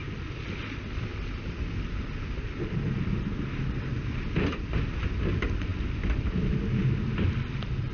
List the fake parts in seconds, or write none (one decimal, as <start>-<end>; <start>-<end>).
1.1-1.7; 3.9-4.6